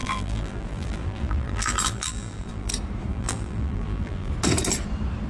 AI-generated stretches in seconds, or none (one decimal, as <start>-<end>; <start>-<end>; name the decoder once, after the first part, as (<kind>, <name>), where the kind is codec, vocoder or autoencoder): 0.0-2.7 (vocoder, BigVGAN v2); 3.1-4.3